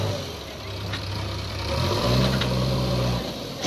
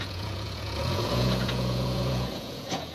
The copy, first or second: second